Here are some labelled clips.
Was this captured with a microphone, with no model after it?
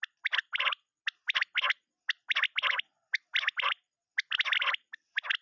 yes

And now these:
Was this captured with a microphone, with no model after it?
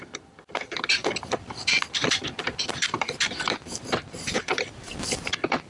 no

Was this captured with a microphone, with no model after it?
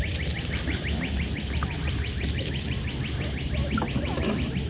yes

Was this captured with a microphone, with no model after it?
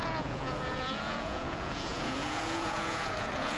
no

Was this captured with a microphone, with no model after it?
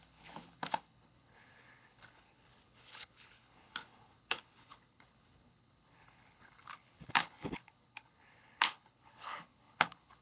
no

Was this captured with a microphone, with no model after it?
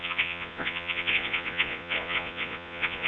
no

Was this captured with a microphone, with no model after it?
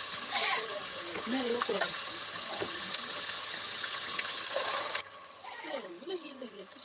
no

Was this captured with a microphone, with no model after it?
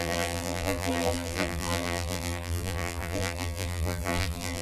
no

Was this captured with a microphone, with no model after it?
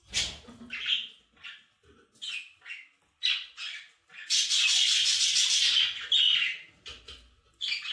yes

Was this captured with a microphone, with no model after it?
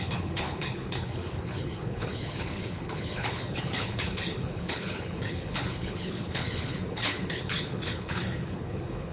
no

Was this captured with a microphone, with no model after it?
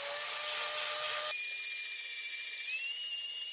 yes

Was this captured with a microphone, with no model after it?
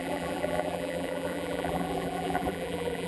no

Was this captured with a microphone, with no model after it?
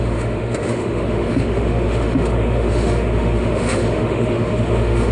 no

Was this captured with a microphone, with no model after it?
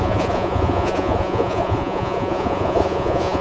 no